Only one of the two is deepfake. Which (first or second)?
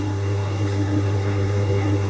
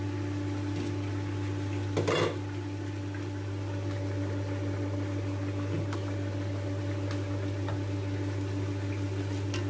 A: first